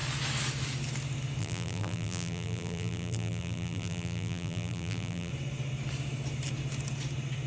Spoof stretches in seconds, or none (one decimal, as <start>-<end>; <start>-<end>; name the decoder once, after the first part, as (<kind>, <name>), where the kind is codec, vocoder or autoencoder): 1.4-5.3 (vocoder, BigVGAN v2)